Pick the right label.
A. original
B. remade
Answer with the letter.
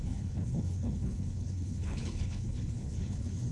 B